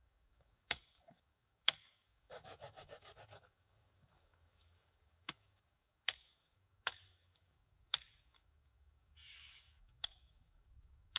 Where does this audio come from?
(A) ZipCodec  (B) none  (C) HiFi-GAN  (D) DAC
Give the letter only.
D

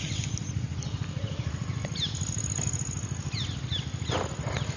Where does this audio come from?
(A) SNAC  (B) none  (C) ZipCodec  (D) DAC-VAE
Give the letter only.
B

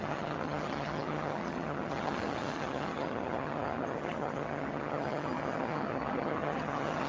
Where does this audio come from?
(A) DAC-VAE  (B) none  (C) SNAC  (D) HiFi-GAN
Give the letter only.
D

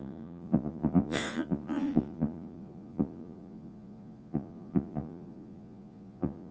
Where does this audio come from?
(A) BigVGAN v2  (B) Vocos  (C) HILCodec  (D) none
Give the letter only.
B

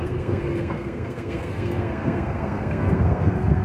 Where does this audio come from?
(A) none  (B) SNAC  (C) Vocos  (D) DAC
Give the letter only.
B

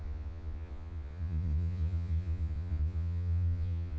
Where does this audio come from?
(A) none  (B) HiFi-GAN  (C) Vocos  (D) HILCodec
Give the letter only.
C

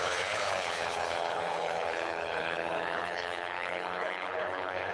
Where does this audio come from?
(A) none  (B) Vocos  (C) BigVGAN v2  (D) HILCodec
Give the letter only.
D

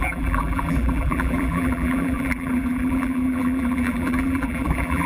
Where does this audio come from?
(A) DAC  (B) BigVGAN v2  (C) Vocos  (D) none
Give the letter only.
B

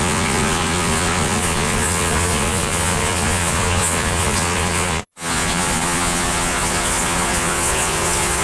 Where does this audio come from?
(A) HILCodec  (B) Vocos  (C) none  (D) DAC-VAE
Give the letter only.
B